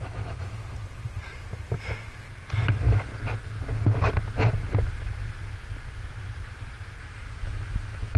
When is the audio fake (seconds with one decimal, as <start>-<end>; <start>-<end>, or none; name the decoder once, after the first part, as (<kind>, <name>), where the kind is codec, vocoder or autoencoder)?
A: 0.0-0.6 (autoencoder, DAC-VAE); 2.7-3.1; 7.0-8.2